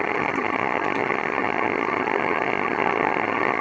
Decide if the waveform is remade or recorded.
remade